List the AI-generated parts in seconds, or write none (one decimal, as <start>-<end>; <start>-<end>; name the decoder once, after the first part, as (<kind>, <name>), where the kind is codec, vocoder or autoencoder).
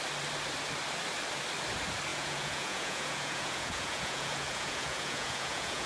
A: 2.1-5.9 (vocoder, Vocos)